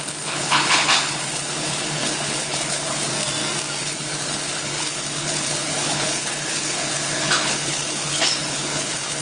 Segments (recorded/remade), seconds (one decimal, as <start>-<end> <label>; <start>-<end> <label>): 0.0-3.1 remade; 3.1-3.8 recorded; 3.8-9.2 remade